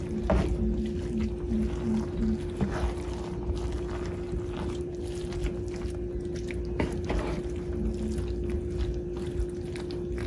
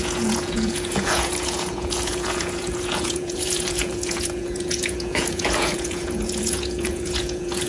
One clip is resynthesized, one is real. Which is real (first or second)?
first